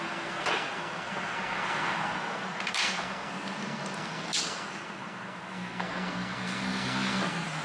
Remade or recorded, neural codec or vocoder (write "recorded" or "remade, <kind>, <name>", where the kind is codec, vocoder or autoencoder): remade, codec, SNAC